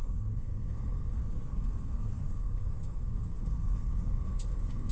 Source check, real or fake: fake